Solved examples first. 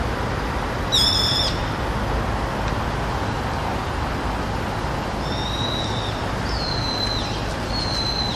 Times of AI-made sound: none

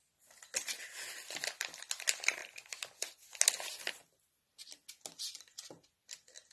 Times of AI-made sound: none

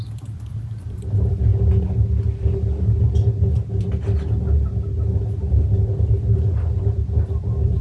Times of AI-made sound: 0.0-1.5 (vocoder, BigVGAN v2); 6.2-7.8

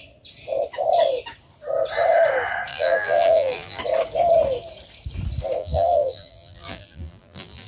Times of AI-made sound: 2.7-3.8 (vocoder, BigVGAN v2); 5.6-7.7

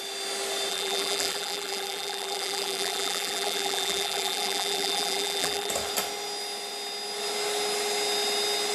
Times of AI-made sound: 0.7-5.7 (vocoder, BigVGAN v2)

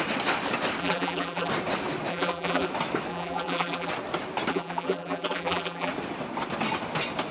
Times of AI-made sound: 0.8-1.5 (vocoder, BigVGAN v2); 2.1-2.7; 3.1-3.9; 4.5-5.9

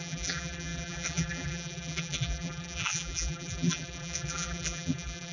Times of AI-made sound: 0.0-5.3 (vocoder, BigVGAN v2)

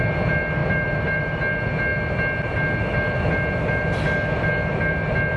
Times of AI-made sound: 0.6-1.2 (vocoder, BigVGAN v2)